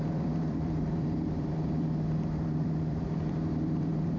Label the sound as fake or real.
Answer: fake